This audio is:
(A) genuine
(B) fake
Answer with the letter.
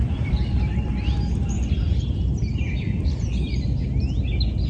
A